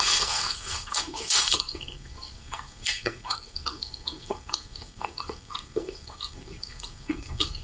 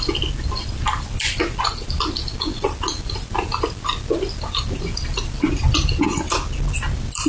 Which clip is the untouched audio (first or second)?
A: second